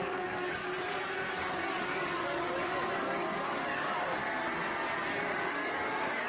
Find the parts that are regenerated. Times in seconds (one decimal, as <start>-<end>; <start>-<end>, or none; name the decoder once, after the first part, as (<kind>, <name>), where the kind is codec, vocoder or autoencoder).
0.0-0.6 (codec, DAC); 1.4-4.2; 4.9-6.3